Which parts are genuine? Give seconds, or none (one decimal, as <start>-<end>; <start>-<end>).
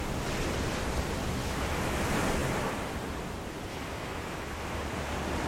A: 0.0-1.4; 2.0-3.7; 4.8-5.5